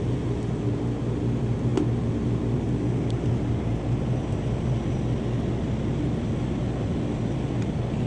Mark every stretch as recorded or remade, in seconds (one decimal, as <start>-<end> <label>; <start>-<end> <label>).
0.0-8.1 recorded